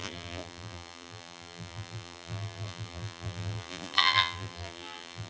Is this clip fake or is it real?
fake